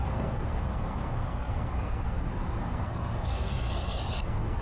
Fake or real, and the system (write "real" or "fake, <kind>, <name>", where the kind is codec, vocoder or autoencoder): fake, codec, SNAC